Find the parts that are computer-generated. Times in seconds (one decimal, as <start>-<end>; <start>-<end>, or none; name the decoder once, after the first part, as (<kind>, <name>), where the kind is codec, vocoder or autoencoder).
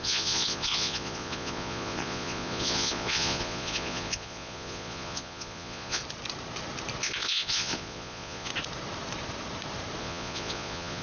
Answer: 0.0-6.0 (vocoder, Vocos); 7.0-8.5; 10.0-11.0